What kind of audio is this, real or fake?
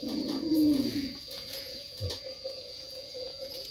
fake